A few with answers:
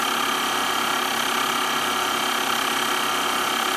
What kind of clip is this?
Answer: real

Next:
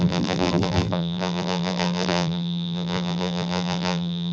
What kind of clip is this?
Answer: fake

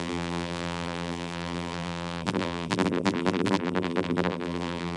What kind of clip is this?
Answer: fake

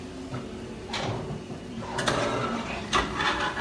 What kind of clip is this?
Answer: real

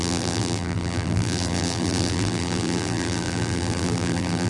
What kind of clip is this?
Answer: fake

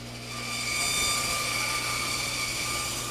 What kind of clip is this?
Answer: real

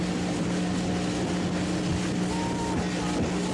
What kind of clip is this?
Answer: real